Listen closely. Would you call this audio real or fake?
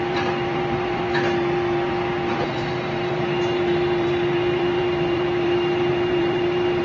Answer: fake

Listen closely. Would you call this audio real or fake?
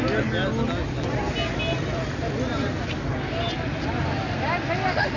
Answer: real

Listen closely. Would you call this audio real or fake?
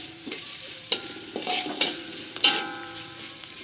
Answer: fake